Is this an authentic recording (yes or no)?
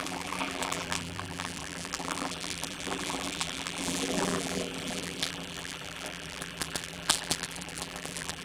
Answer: no